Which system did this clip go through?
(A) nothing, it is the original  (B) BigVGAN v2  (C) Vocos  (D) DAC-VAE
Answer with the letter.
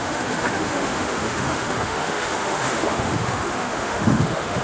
D